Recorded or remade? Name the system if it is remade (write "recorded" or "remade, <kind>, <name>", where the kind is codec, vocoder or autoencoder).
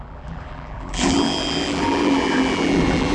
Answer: remade, vocoder, BigVGAN v2